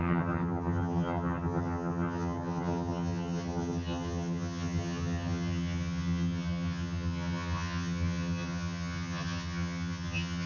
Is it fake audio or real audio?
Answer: fake